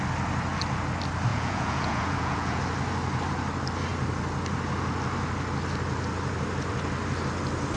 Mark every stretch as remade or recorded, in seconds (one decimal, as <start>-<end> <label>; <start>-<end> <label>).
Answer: 0.0-1.3 recorded; 1.3-2.6 remade; 2.6-7.8 recorded